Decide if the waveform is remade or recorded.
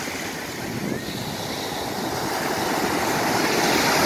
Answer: recorded